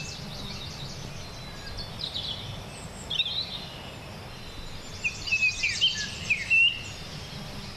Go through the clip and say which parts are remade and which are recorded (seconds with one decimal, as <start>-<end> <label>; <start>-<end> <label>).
0.0-7.8 recorded